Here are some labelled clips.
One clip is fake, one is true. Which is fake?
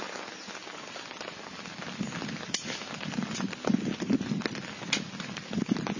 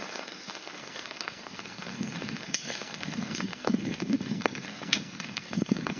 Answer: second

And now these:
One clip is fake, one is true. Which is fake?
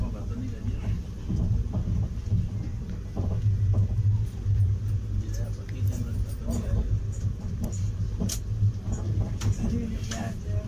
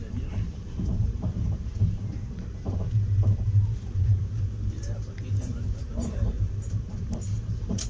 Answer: second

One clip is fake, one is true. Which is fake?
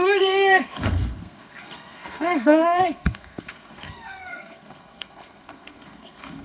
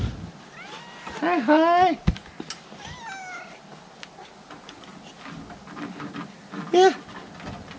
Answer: first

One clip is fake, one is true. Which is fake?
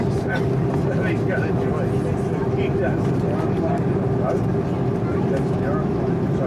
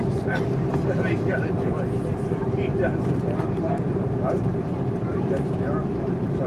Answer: second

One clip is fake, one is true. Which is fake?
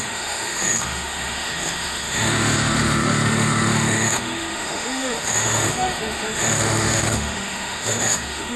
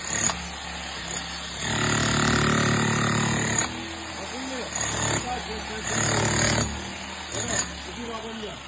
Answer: first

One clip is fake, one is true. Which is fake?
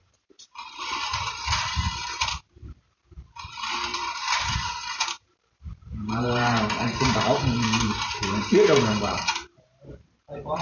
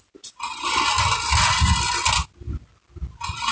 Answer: first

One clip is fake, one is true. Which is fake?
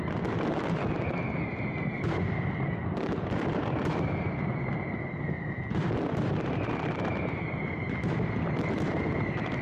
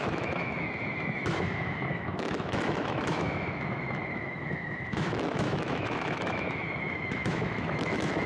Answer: second